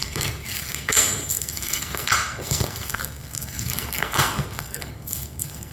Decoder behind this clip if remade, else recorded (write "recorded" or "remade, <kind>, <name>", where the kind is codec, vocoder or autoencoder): remade, codec, SNAC